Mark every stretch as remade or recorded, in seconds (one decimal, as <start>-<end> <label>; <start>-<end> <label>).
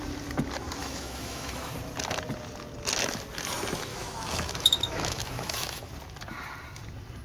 0.0-0.8 recorded; 0.8-1.7 remade; 1.7-3.9 recorded; 3.9-5.9 remade; 5.9-7.2 recorded